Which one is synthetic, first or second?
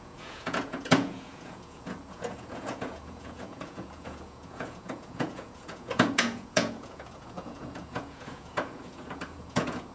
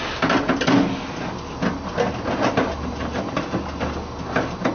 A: first